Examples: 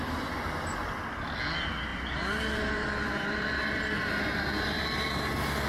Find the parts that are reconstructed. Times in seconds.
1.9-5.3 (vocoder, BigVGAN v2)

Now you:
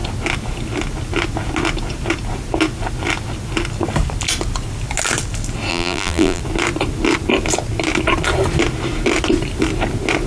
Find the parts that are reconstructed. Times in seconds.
5.7-6.4 (vocoder, BigVGAN v2)

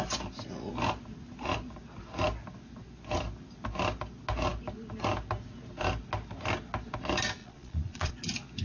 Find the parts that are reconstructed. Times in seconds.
7.4-8.1 (vocoder, Vocos)

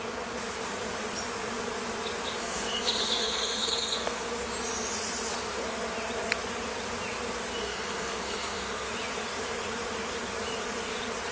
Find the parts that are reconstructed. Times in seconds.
2.4-4.3 (codec, SNAC); 7.6-8.9

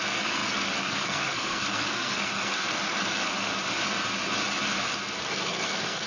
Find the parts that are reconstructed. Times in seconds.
0.0-3.5 (codec, SNAC); 5.2-6.1

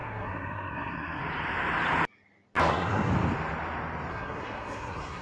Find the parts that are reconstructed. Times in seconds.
0.0-1.2 (codec, SNAC); 2.7-3.1; 4.1-5.2